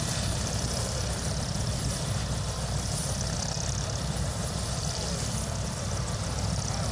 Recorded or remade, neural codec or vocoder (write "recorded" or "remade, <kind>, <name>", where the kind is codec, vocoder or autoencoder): remade, vocoder, BigVGAN v2